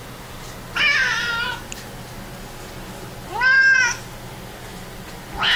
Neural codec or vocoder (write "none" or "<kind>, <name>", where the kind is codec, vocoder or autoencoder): none